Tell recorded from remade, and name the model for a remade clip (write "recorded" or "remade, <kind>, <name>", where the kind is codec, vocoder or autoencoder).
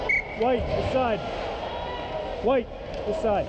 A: recorded